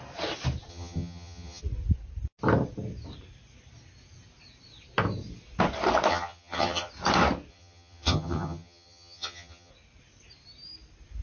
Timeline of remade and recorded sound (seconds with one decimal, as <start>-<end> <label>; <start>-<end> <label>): 0.0-0.7 recorded; 0.7-1.6 remade; 1.6-6.1 recorded; 6.1-6.9 remade; 6.9-7.5 recorded; 7.5-9.7 remade; 9.7-11.2 recorded

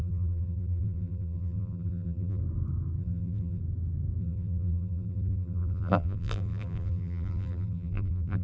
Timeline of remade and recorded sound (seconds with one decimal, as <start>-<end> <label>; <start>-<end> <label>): 0.0-2.4 remade; 2.4-3.0 recorded; 3.0-3.6 remade; 3.6-4.2 recorded; 4.2-8.4 remade